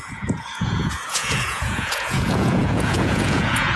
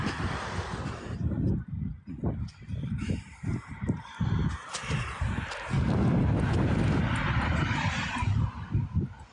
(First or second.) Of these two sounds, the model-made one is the first